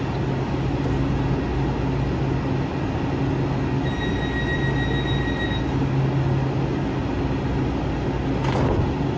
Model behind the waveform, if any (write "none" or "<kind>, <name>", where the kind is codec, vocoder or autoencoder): none